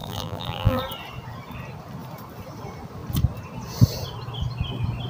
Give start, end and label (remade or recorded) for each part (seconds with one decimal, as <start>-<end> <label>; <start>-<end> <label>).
0.0-0.8 remade; 0.8-5.1 recorded